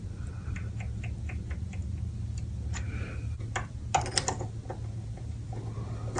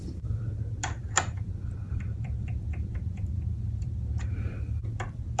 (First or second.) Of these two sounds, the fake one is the second